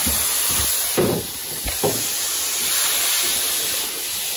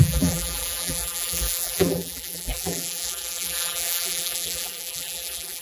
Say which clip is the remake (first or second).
second